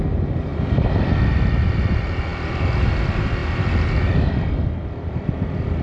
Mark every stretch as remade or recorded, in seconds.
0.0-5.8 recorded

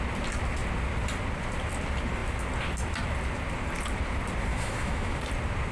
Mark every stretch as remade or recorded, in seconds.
0.0-4.5 recorded; 4.5-5.2 remade; 5.2-5.7 recorded

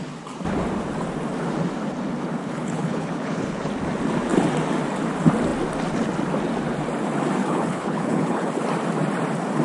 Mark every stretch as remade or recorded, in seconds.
0.0-2.4 recorded; 2.4-3.7 remade; 3.7-7.4 recorded; 7.4-8.5 remade; 8.5-9.6 recorded